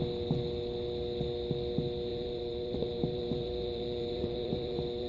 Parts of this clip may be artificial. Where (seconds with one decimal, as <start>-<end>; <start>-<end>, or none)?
2.1-5.1